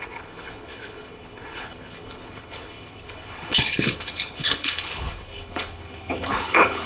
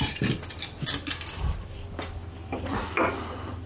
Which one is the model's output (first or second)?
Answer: first